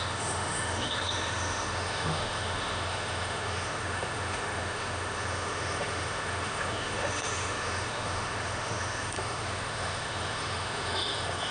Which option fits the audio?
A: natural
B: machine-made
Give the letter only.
B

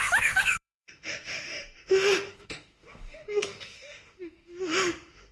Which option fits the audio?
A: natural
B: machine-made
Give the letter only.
B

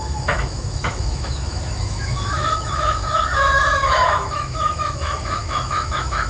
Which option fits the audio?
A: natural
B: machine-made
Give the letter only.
B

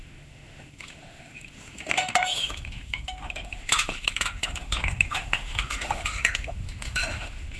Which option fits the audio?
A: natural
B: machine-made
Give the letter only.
B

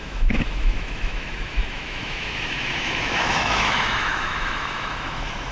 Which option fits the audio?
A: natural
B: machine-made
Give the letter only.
B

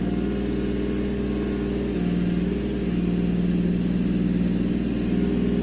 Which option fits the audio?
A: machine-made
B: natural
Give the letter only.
B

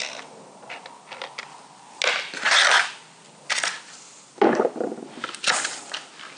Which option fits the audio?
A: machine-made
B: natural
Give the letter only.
B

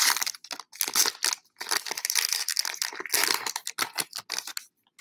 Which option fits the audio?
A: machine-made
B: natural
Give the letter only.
B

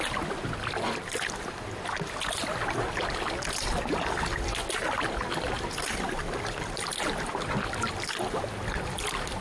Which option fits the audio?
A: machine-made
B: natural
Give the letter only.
B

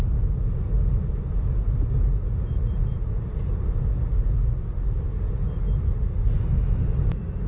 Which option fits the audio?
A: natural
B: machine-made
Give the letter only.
A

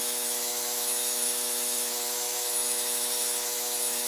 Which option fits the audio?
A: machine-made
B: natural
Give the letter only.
A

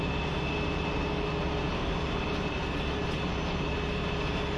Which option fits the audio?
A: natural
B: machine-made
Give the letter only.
A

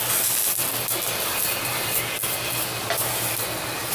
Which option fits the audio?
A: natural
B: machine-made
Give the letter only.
A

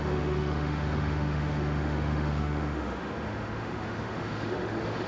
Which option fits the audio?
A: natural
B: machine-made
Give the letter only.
B